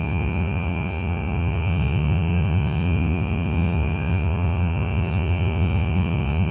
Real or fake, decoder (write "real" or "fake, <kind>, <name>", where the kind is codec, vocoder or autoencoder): fake, vocoder, Vocos